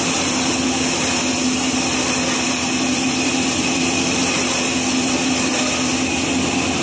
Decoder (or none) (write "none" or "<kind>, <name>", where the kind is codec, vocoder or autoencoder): none